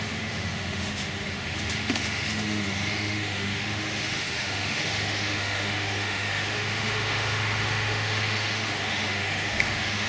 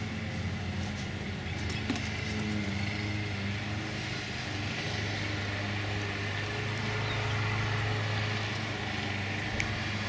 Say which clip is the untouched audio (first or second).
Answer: second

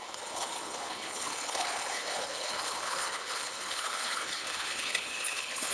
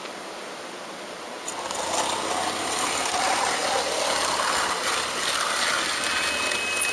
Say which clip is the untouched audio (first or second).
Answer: second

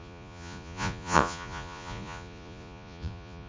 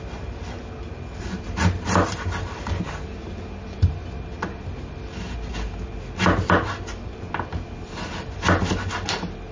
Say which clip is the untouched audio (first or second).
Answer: second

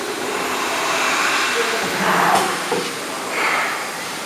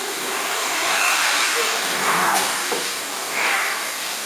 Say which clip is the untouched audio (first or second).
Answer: first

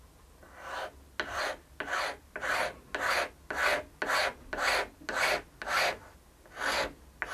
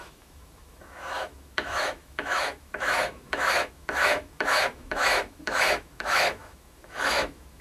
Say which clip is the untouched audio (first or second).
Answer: first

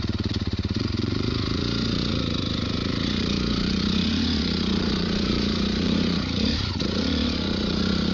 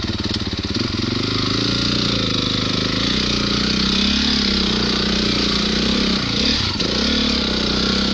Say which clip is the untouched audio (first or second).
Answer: second